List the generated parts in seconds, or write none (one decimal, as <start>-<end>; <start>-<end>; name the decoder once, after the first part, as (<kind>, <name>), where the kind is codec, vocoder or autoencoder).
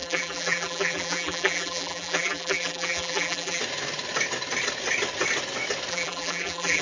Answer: 0.0-3.6 (vocoder, BigVGAN v2); 5.9-6.8